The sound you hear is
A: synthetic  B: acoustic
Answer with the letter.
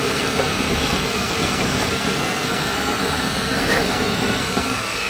A